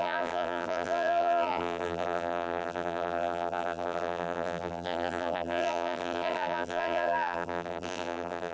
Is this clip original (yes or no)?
no